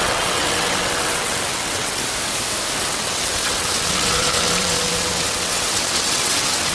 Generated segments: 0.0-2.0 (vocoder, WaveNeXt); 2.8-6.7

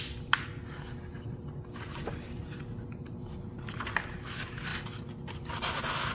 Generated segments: none

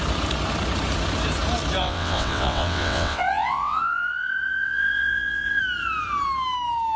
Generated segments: 1.8-5.6 (vocoder, WaveNeXt)

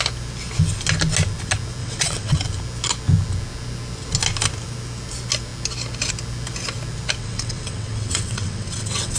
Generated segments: 1.8-2.4 (vocoder, WaveNeXt); 7.2-9.2